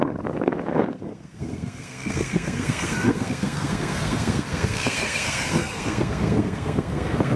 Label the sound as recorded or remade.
remade